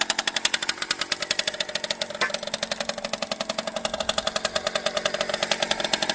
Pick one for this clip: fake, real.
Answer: real